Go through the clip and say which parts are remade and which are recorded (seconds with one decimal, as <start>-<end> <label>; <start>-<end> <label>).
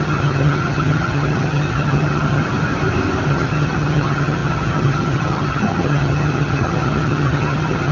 0.0-2.4 remade; 2.4-3.3 recorded; 3.3-7.9 remade